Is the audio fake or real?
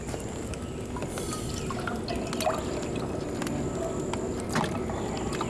real